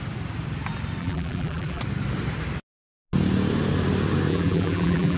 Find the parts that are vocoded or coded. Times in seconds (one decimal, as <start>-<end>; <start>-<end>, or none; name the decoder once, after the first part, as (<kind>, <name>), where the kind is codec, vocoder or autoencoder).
1.0-1.8 (vocoder, BigVGAN v2); 4.3-5.2